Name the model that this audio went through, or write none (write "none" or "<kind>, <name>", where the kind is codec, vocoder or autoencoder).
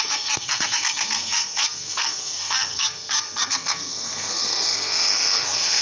codec, SNAC